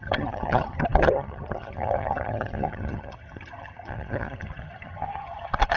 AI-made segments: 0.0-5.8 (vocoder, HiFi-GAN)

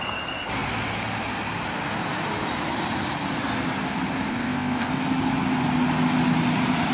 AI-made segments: 4.3-4.9 (codec, ZipCodec)

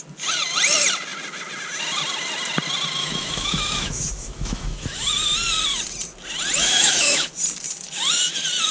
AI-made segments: 3.0-5.1 (autoencoder, DAC-VAE); 6.6-7.3

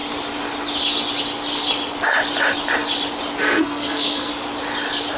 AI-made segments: 3.4-4.3 (codec, SNAC)

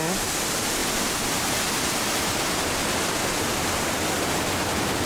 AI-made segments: none

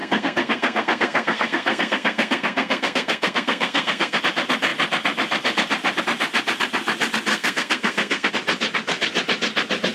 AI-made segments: 0.0-4.2 (codec, SNAC); 7.3-8.3